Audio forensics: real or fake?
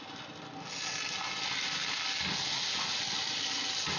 real